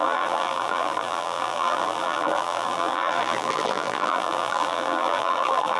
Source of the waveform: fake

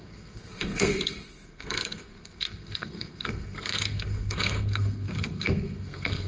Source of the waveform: fake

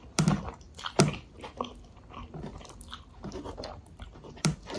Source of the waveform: real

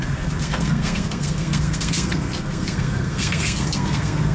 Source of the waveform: fake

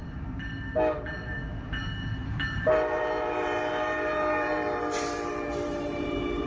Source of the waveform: fake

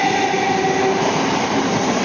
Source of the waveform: real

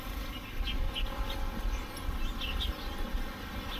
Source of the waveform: real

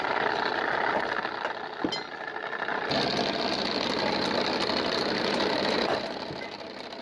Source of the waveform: real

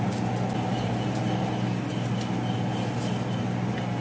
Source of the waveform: real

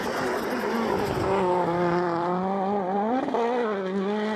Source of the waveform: real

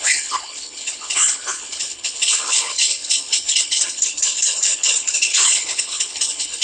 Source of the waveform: fake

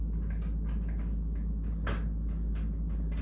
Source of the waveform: real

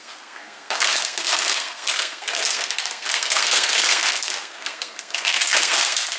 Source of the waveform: fake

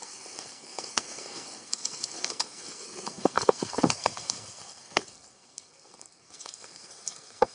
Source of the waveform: fake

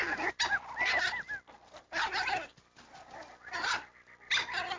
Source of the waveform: real